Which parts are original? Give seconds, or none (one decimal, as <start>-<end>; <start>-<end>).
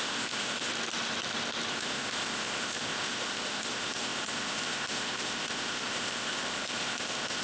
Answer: 0.7-1.7